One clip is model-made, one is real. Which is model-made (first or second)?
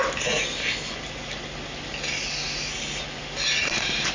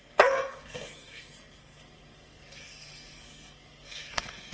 second